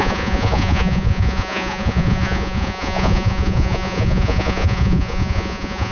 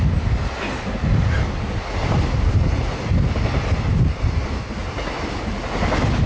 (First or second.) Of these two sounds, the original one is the second